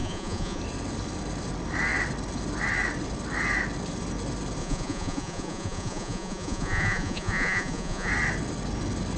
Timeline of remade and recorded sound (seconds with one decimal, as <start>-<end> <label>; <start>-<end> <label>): 0.0-0.6 remade; 0.6-4.6 recorded; 4.6-8.1 remade; 8.1-9.2 recorded